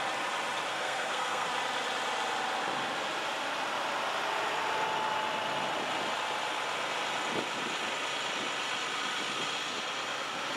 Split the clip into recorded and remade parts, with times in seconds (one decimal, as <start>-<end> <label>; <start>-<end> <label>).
0.0-0.7 recorded; 0.7-1.5 remade; 1.5-10.6 recorded